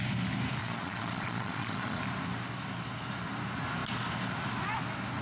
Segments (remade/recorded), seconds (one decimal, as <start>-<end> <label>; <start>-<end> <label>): 0.0-0.6 recorded; 0.6-2.0 remade; 2.0-5.2 recorded